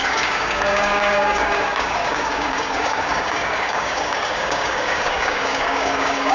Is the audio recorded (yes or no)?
no